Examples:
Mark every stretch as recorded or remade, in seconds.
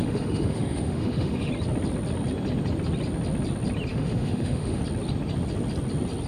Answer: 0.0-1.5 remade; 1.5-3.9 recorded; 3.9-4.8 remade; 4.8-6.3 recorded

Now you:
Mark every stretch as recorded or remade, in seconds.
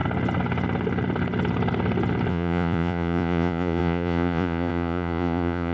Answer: 0.0-2.3 recorded; 2.3-5.7 remade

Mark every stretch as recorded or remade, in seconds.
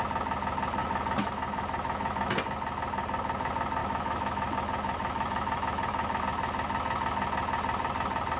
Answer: 0.0-0.8 recorded; 0.8-2.3 remade; 2.3-3.8 recorded; 3.8-6.2 remade; 6.2-8.4 recorded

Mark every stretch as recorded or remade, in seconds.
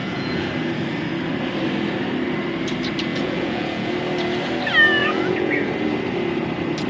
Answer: 0.0-0.5 remade; 0.5-3.1 recorded; 3.1-3.9 remade; 3.9-5.0 recorded; 5.0-5.5 remade; 5.5-6.9 recorded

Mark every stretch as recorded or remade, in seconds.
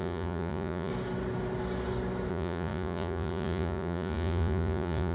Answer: 0.0-0.9 remade; 0.9-2.3 recorded; 2.3-5.1 remade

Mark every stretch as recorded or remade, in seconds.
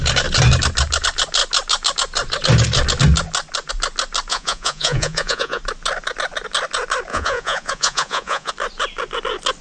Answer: 0.0-4.3 recorded; 4.3-5.6 remade; 5.6-7.1 recorded; 7.1-8.5 remade; 8.5-9.6 recorded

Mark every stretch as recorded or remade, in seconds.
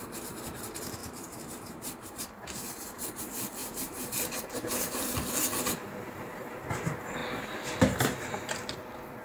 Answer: 0.0-1.0 recorded; 1.0-3.2 remade; 3.2-3.6 recorded; 3.6-5.2 remade; 5.2-9.2 recorded